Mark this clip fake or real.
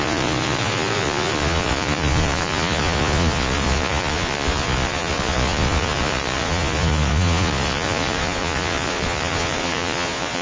fake